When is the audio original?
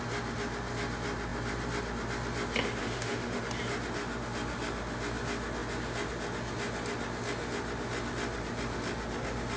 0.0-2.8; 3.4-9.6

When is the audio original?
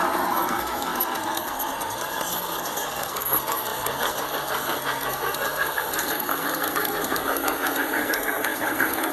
none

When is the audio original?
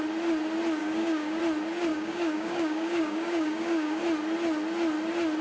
0.0-0.8; 1.4-1.9; 4.0-5.4